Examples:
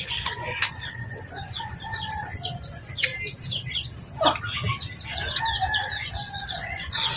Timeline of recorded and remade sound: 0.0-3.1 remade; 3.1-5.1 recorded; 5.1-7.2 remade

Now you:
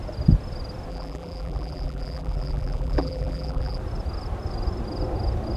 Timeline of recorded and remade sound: 0.0-0.9 recorded; 0.9-3.8 remade; 3.8-5.6 recorded

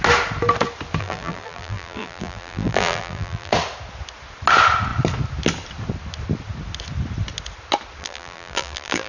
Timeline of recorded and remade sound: 0.0-1.0 recorded; 1.0-3.5 remade; 3.5-8.0 recorded; 8.0-9.1 remade

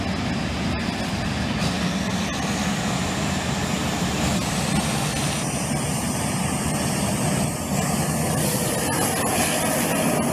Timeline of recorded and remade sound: 0.0-10.3 recorded

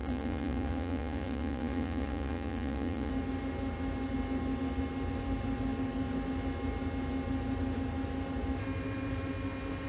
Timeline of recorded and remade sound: 0.0-3.1 remade; 3.1-9.9 recorded